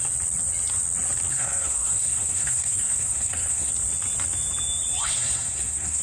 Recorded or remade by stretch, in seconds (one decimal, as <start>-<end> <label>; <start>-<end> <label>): 0.0-1.3 recorded; 1.3-3.7 remade; 3.7-5.0 recorded; 5.0-6.0 remade